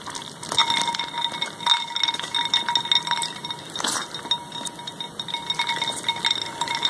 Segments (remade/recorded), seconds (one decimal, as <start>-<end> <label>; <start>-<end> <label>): 0.0-6.9 recorded